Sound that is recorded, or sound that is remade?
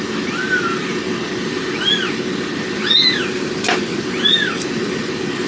recorded